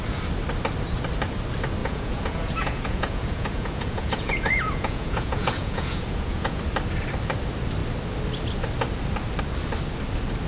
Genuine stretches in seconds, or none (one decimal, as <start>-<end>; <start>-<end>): 0.0-1.8; 6.6-10.5